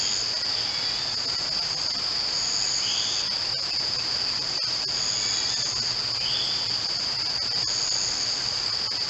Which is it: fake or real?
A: real